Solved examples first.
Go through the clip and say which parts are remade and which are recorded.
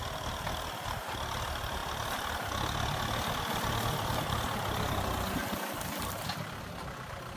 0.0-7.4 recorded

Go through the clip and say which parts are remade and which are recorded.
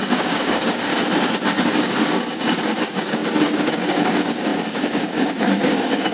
0.0-0.9 remade; 0.9-1.6 recorded; 1.6-6.1 remade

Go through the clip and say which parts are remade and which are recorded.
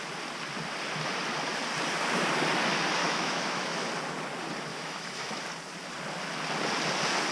0.0-3.0 recorded; 3.0-3.9 remade; 3.9-4.7 recorded; 4.7-5.4 remade; 5.4-7.3 recorded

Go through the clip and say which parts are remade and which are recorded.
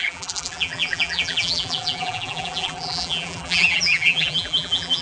0.0-5.0 remade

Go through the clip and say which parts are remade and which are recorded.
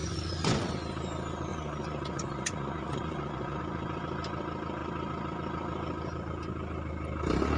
0.0-0.7 remade; 0.7-1.5 recorded; 1.5-3.6 remade; 3.6-7.6 recorded